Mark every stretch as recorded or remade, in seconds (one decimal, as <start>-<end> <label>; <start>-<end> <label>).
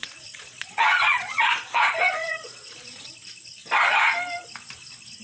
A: 0.0-3.1 remade; 3.1-5.2 recorded